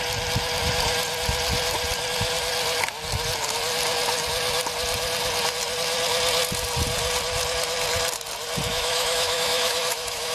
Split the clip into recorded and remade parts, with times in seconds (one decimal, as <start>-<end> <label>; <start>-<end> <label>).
0.0-8.7 recorded; 8.7-10.3 remade